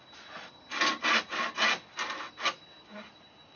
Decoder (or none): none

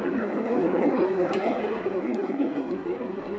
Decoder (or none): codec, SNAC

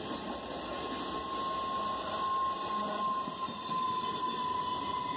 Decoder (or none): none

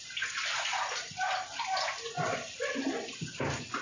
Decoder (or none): none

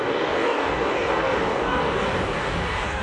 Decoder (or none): codec, DAC